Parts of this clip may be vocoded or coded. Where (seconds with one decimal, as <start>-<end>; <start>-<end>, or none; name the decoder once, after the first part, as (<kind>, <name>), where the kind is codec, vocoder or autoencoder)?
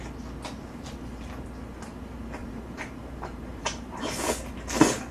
2.4-4.0 (vocoder, BigVGAN v2)